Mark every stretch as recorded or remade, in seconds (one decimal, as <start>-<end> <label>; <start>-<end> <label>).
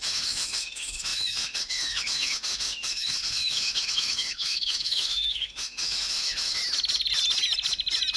0.0-6.6 remade; 6.6-8.2 recorded